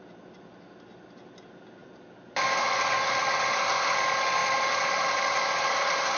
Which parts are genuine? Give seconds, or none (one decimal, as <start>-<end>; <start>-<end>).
0.0-6.2